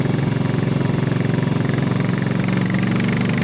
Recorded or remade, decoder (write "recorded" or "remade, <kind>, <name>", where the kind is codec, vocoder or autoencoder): recorded